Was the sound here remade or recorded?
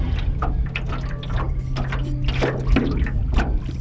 recorded